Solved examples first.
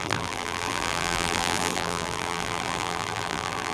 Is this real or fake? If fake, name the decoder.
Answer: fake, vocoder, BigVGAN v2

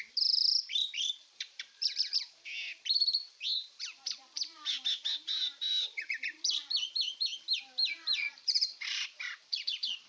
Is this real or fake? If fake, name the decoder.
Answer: fake, vocoder, BigVGAN v2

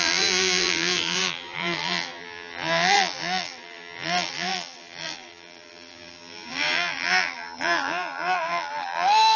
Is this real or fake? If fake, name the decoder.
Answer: fake, vocoder, BigVGAN v2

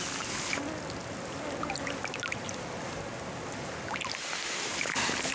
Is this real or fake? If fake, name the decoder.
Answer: real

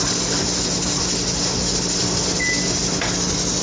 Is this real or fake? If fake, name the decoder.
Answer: real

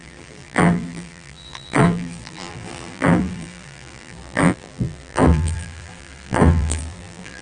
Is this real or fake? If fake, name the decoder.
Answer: fake, vocoder, BigVGAN v2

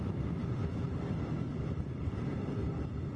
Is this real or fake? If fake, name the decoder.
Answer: fake, vocoder, BigVGAN v2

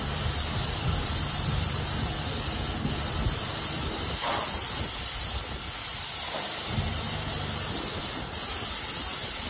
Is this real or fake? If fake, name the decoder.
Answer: fake, vocoder, BigVGAN v2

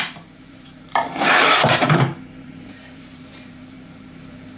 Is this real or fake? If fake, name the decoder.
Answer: fake, vocoder, BigVGAN v2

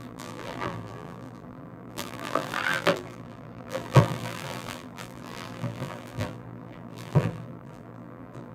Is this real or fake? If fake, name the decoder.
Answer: fake, vocoder, BigVGAN v2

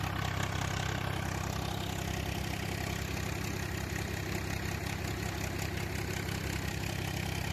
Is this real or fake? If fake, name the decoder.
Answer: real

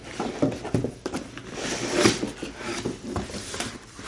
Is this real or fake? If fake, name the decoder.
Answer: fake, vocoder, BigVGAN v2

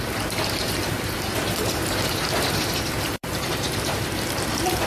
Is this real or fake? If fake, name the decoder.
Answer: fake, vocoder, BigVGAN v2